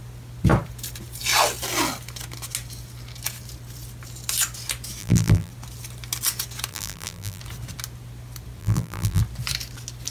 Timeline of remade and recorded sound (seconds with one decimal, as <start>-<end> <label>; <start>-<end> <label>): 0.0-5.0 recorded; 5.0-5.5 remade; 5.5-6.7 recorded; 6.7-7.4 remade; 7.4-8.6 recorded; 8.6-9.2 remade; 9.2-10.1 recorded